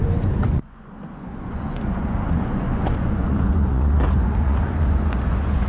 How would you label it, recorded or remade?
remade